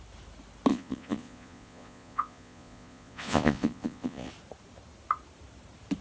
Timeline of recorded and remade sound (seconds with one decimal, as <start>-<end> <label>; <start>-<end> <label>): 0.0-0.7 recorded; 0.7-4.3 remade; 4.3-6.0 recorded